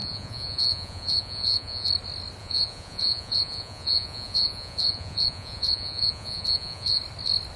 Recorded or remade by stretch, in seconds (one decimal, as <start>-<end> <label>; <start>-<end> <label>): 0.0-1.9 remade; 1.9-2.4 recorded; 2.4-7.0 remade; 7.0-7.6 recorded